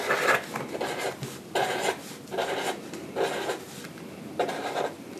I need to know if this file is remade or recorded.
recorded